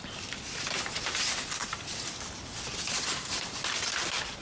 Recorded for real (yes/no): no